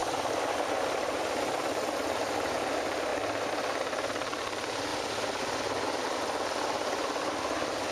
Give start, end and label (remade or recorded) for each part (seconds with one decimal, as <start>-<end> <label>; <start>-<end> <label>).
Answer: 0.0-1.2 remade; 1.2-7.9 recorded